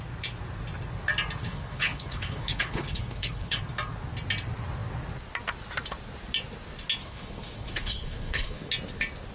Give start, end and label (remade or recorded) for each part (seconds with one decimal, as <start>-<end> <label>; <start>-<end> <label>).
0.0-1.4 recorded; 1.4-3.6 remade; 3.6-7.0 recorded; 7.0-8.7 remade; 8.7-9.3 recorded